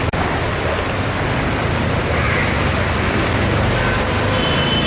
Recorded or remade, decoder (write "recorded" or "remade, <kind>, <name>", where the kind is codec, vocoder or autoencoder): recorded